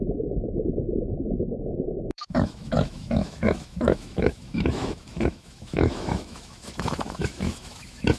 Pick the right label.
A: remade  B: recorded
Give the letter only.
A